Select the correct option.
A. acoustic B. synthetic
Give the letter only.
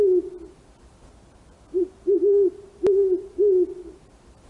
A